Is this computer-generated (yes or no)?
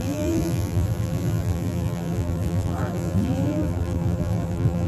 yes